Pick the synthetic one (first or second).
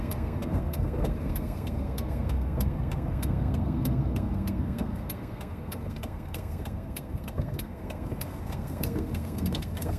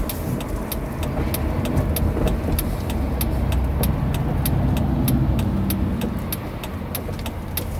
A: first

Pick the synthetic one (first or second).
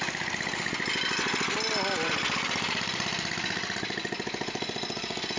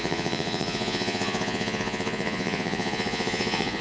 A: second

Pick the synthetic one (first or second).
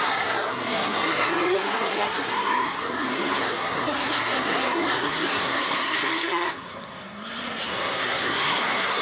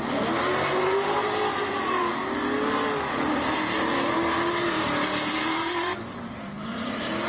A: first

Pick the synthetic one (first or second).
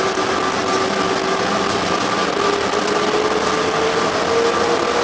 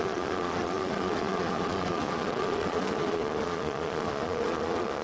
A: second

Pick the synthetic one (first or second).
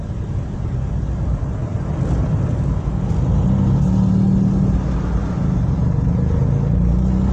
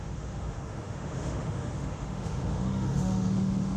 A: second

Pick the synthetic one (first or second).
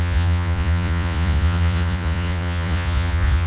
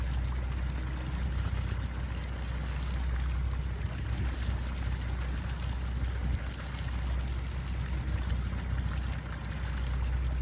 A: first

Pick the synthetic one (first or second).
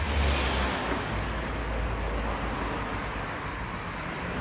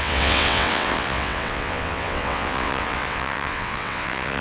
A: second